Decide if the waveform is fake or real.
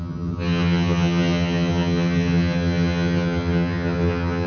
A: fake